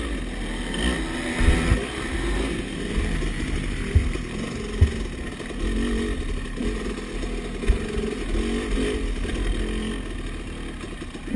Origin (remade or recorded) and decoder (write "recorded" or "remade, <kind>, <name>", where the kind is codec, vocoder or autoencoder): recorded